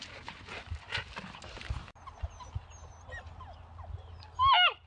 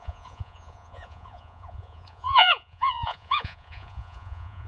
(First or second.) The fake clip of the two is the second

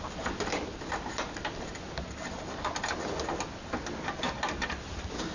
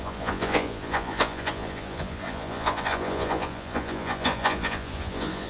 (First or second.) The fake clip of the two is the second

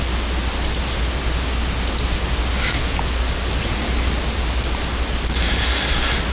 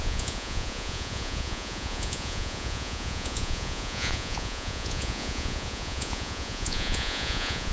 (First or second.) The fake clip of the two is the second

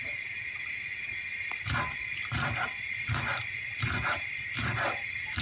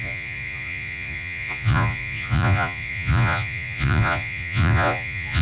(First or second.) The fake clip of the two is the second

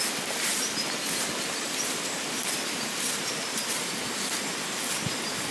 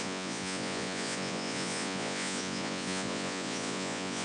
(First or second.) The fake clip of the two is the second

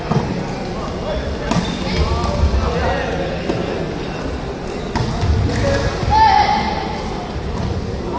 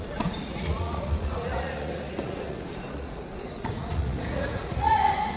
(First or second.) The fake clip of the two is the second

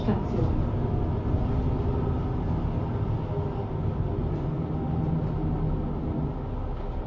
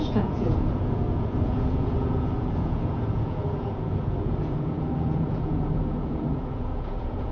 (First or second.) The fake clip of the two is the second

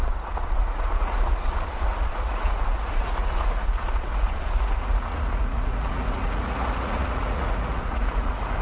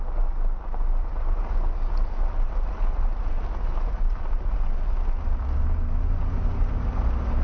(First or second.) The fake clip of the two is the first